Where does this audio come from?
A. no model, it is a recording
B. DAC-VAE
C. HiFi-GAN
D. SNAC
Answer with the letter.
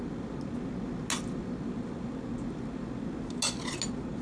A